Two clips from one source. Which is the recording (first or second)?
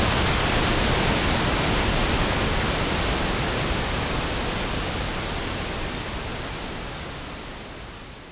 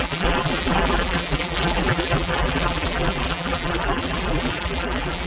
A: first